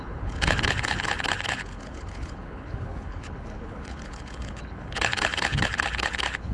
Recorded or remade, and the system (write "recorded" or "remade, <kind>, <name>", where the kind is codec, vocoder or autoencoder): remade, codec, HILCodec